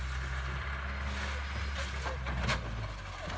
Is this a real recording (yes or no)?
yes